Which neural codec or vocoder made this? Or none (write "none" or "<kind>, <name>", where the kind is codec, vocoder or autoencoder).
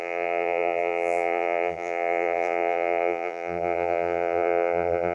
vocoder, BigVGAN v2